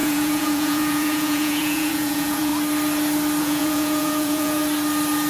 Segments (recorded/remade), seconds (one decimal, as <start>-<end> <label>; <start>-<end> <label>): 0.0-2.5 remade; 2.5-3.4 recorded; 3.4-4.6 remade; 4.6-5.3 recorded